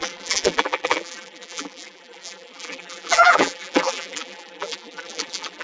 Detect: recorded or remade remade